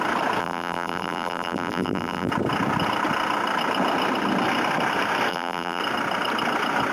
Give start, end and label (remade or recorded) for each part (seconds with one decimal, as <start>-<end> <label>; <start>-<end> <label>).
0.0-0.4 recorded; 0.4-2.3 remade; 2.3-5.3 recorded; 5.3-5.8 remade; 5.8-6.9 recorded